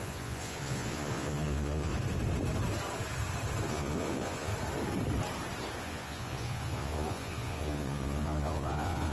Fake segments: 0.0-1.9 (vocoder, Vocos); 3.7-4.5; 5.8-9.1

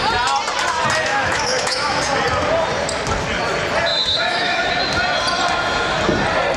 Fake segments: 1.1-2.0 (autoencoder, DAC-VAE); 3.9-4.7

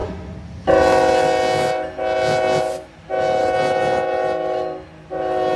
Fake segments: none

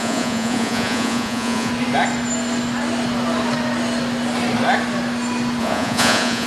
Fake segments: 0.0-1.7 (vocoder, Vocos); 5.6-6.5

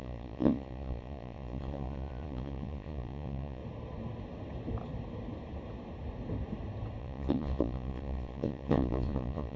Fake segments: 0.0-3.6 (vocoder, Vocos); 7.0-9.6

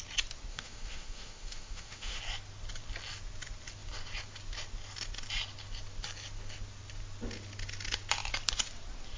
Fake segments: 0.5-2.2 (autoencoder, DAC-VAE)

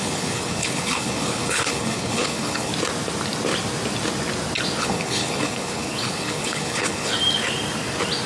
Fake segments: 0.0-2.7 (codec, HILCodec); 4.8-7.1